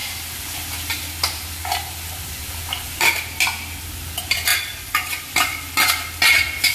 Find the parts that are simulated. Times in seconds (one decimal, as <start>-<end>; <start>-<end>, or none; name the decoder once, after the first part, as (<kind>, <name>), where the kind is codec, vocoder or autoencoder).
none